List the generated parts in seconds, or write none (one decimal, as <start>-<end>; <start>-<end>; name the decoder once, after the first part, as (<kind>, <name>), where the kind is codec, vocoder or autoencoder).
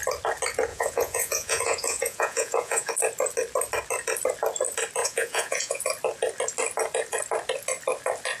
0.7-2.9 (vocoder, Vocos); 5.0-5.8